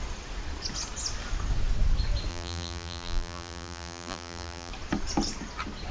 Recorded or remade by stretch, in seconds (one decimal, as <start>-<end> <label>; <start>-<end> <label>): 0.0-2.3 recorded; 2.3-4.7 remade; 4.7-5.9 recorded